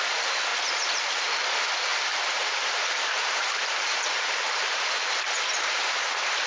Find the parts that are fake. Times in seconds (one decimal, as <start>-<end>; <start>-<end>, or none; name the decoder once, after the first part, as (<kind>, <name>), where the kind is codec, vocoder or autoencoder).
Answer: 0.5-1.4 (vocoder, BigVGAN v2); 1.9-5.8